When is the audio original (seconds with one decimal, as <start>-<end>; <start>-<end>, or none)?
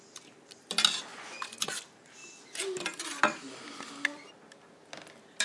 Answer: 0.0-1.1; 1.7-5.4